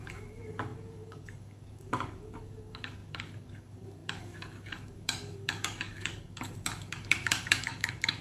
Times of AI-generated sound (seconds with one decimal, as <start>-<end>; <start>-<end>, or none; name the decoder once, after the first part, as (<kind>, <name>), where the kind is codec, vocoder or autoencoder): 0.0-8.2 (codec, DAC)